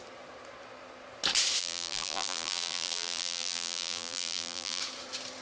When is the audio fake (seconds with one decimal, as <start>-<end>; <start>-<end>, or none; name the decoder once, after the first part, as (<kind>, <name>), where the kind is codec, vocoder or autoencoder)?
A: 1.6-4.8 (vocoder, BigVGAN v2)